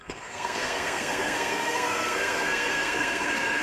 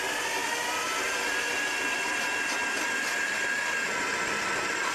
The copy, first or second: first